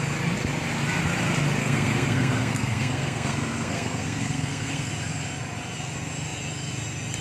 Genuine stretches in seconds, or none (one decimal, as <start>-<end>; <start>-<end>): 0.0-1.6; 4.9-7.2